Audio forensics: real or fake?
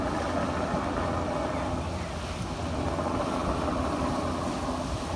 real